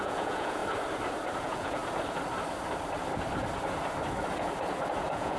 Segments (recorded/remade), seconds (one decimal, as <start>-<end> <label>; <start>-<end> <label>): 0.0-0.6 remade; 0.6-1.4 recorded; 1.4-1.8 remade; 1.8-5.0 recorded; 5.0-5.4 remade